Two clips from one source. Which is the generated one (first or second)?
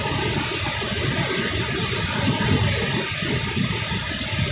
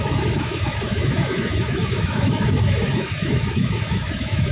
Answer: second